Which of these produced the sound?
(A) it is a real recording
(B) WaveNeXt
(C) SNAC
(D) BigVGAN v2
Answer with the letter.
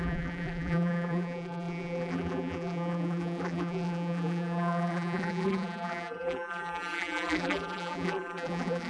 D